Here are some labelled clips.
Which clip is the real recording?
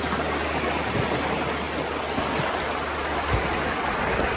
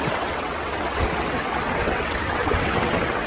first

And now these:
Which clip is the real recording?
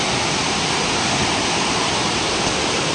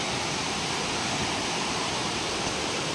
first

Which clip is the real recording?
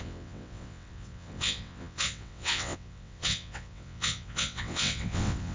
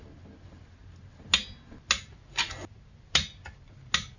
second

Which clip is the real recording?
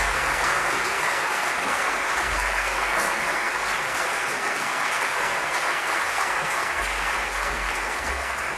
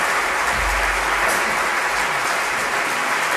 second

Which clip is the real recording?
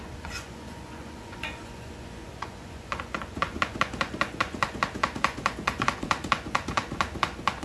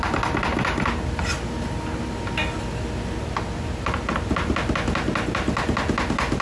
second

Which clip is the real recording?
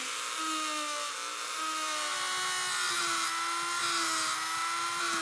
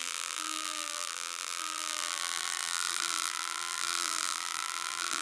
first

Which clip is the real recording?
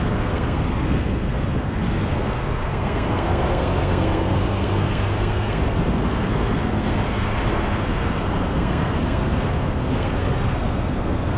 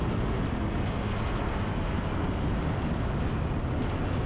second